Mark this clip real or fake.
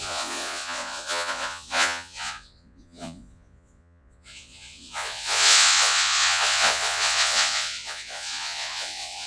fake